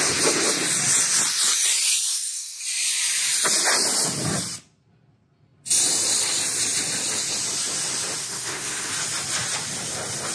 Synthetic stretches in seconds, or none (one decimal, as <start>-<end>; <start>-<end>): 2.1-2.6; 8.2-8.9